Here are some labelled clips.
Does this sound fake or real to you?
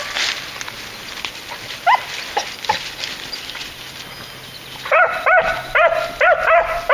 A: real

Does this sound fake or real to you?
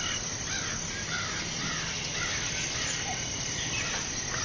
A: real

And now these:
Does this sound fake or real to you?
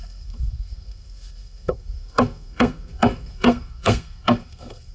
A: fake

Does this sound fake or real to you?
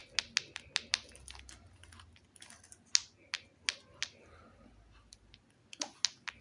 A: real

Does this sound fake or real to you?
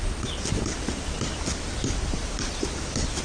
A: real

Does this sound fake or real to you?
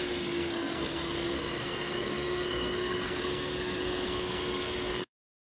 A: fake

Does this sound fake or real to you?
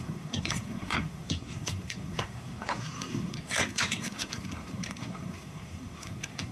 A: fake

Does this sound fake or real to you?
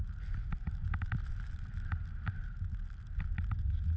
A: real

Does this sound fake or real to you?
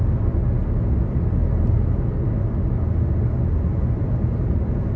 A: real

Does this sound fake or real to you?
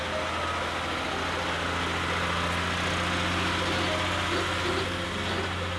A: real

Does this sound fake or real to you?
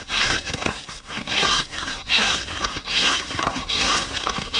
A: fake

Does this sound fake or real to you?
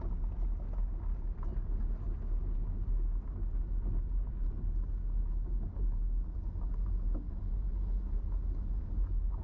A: real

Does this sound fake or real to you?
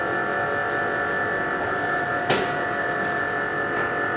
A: real